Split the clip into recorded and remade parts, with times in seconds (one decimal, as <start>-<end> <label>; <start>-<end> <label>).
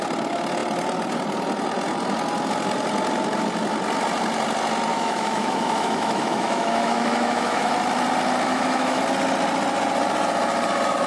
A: 0.0-4.9 recorded; 4.9-7.7 remade; 7.7-8.5 recorded; 8.5-9.0 remade; 9.0-11.1 recorded